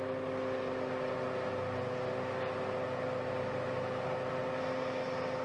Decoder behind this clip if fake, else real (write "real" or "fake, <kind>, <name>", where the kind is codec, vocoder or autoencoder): real